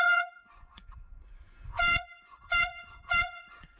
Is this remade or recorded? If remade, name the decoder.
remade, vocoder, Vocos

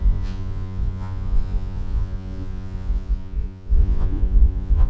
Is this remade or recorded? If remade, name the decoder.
remade, vocoder, Vocos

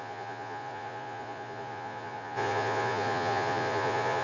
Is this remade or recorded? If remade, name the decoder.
remade, vocoder, Vocos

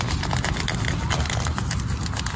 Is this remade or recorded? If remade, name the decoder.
recorded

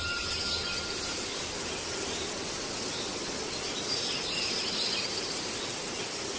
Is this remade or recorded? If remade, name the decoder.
recorded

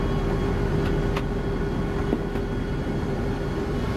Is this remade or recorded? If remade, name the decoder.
recorded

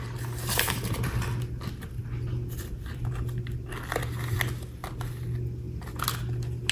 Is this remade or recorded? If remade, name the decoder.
recorded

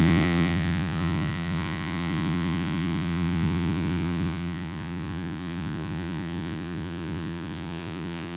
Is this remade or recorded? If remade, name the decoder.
remade, vocoder, Vocos